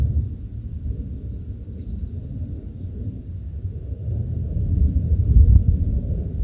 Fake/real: real